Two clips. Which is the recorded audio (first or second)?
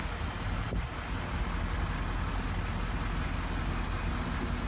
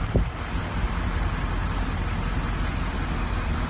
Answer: first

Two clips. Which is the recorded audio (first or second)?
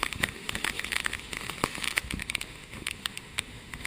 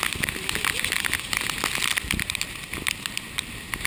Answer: second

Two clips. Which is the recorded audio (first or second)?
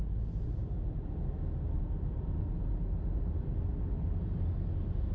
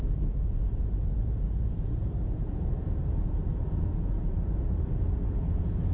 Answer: first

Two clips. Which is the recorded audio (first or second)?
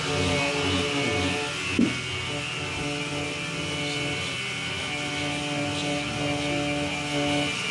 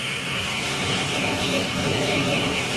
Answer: first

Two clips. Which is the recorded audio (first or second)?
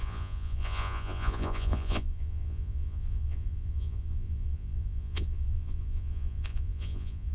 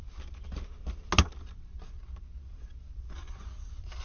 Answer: second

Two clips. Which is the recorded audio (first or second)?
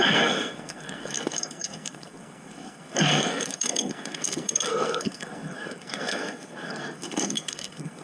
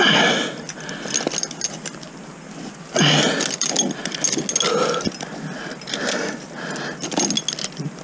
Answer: second